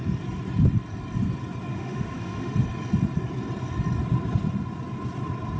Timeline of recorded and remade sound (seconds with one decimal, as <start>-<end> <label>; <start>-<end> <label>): 0.0-1.7 recorded; 1.7-2.5 remade; 2.5-5.6 recorded